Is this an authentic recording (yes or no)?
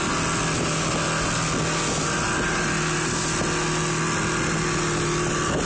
yes